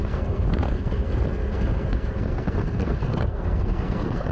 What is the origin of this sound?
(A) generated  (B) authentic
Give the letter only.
A